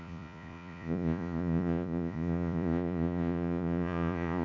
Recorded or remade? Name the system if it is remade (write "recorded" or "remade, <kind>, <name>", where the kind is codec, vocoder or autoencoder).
remade, vocoder, Vocos